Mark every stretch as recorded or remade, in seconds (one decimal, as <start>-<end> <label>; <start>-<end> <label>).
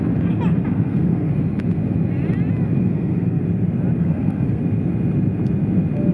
0.0-0.7 recorded; 0.7-1.3 remade; 1.3-2.8 recorded; 2.8-3.4 remade; 3.4-4.0 recorded; 4.0-4.6 remade; 4.6-6.1 recorded